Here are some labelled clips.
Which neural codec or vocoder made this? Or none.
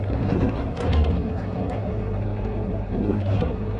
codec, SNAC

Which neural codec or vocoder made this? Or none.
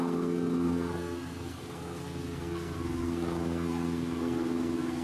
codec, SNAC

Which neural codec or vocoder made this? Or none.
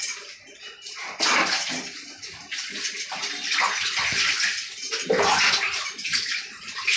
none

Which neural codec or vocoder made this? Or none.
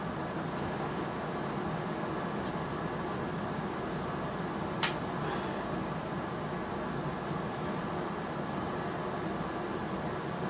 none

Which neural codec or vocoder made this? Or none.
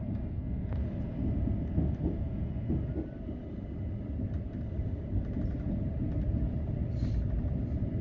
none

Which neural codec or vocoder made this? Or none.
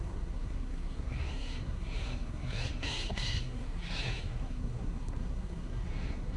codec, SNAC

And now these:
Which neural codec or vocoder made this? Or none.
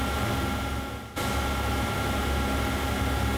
none